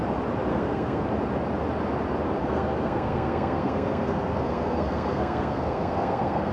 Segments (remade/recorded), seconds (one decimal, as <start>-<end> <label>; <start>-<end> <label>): 0.0-0.5 recorded; 0.5-1.1 remade; 1.1-2.4 recorded; 2.4-6.5 remade